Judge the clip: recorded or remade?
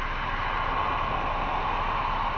recorded